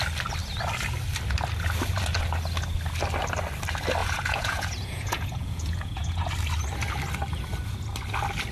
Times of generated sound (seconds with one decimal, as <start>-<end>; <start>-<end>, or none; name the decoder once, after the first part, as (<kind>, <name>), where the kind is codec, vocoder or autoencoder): 4.0-6.3 (vocoder, Vocos)